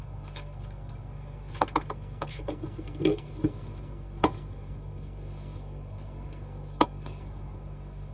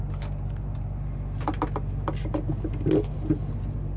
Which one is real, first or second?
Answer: second